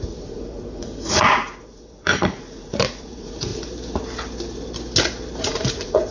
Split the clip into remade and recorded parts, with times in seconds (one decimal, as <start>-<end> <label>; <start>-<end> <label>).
0.0-3.5 remade; 3.5-5.4 recorded; 5.4-6.1 remade